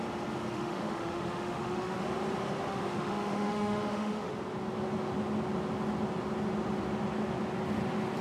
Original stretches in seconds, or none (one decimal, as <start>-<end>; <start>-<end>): 0.0-0.5; 2.0-2.7; 4.3-8.2